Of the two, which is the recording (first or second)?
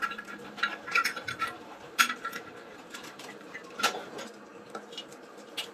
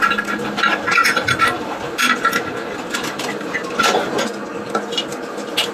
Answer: second